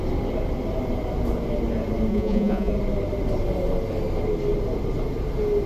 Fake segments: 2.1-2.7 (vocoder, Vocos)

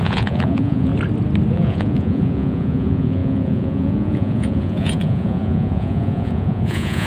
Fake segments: 0.0-0.9 (vocoder, Vocos); 1.5-7.1

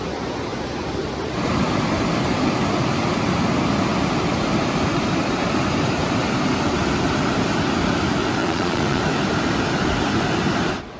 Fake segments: 8.4-9.0 (vocoder, Vocos)

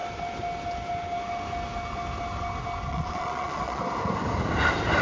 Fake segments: 2.9-3.8 (vocoder, Vocos)

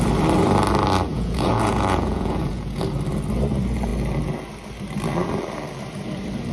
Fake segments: 1.1-2.8 (vocoder, Vocos)